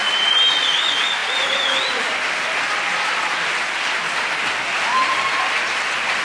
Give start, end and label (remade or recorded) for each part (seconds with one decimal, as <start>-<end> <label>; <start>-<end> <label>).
0.0-6.2 recorded